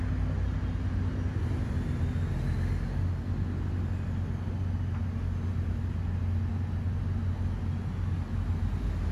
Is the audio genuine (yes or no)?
yes